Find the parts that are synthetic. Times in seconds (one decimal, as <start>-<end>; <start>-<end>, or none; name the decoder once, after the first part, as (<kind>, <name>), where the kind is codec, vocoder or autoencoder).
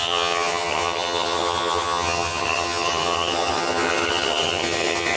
0.0-5.2 (vocoder, HiFi-GAN)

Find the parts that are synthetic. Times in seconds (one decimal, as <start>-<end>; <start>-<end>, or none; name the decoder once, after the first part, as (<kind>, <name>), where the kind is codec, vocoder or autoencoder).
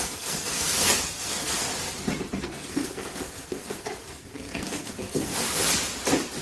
0.0-1.7 (codec, SNAC); 2.4-5.3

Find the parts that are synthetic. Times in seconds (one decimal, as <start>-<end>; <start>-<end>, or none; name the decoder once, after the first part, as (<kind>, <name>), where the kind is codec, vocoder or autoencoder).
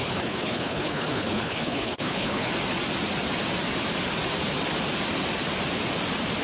0.0-2.5 (codec, HILCodec)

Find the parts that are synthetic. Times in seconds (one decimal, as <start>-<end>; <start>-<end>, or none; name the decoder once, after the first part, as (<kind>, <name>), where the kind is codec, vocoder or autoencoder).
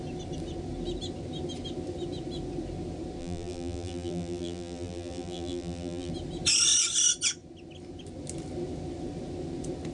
3.2-6.1 (vocoder, BigVGAN v2)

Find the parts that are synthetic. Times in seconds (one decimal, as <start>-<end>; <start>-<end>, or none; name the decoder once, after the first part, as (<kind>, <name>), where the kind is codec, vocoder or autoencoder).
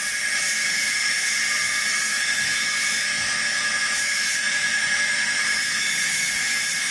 0.5-1.4 (autoencoder, DAC-VAE); 1.9-6.9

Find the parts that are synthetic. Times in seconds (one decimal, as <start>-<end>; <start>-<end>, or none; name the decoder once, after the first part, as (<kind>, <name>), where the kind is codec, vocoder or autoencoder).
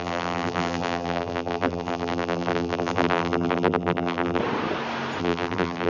0.0-4.4 (vocoder, BigVGAN v2); 5.2-5.9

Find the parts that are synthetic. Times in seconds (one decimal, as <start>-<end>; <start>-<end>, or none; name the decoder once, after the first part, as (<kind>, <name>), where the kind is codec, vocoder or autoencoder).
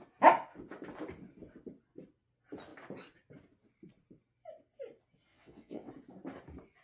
5.3-5.9 (vocoder, WaveNeXt)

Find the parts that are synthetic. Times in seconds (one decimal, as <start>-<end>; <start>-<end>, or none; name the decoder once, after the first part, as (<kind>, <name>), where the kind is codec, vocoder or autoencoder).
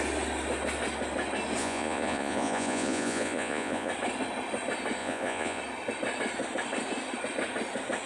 1.6-3.9 (vocoder, Vocos); 5.0-5.6